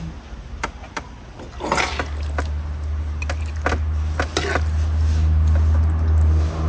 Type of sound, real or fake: real